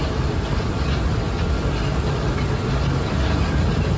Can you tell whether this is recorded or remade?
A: recorded